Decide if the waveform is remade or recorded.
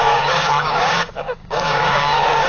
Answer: remade